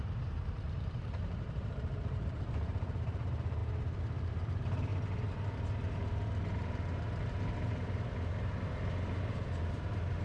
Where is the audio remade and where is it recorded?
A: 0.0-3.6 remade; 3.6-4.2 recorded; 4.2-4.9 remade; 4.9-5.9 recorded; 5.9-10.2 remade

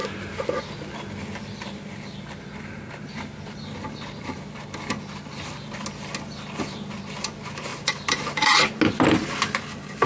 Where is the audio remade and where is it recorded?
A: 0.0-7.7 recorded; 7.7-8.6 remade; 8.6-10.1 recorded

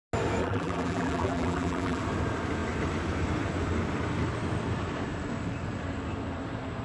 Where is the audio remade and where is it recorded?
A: 0.0-0.4 recorded; 0.4-2.0 remade; 2.0-6.8 recorded